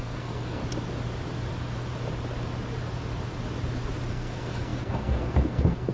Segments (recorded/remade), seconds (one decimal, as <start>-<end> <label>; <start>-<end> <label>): 0.0-0.6 remade; 0.6-4.1 recorded; 4.1-5.9 remade